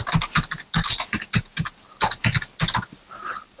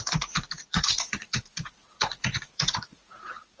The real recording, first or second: first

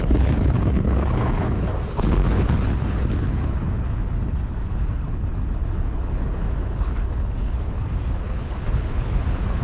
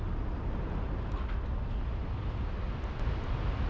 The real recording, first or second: second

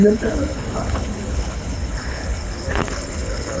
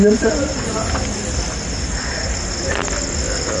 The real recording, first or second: second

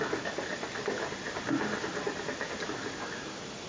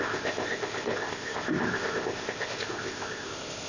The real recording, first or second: first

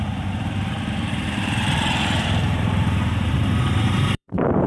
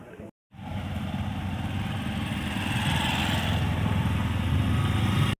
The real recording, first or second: second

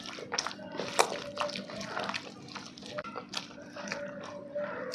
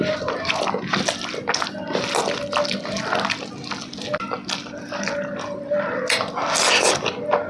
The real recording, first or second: second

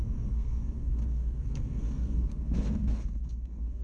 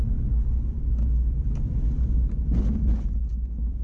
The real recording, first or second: second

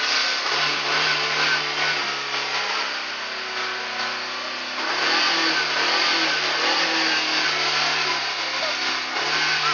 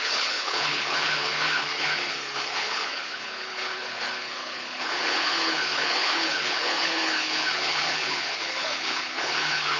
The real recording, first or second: first